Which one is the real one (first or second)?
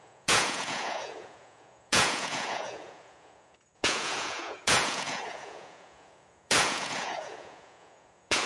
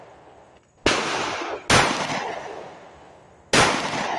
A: second